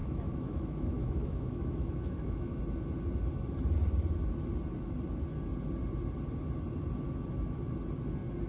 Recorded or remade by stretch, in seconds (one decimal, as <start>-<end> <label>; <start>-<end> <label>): 0.0-2.6 remade; 2.6-8.5 recorded